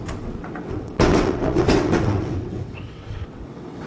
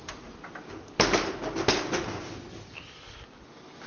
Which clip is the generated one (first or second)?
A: first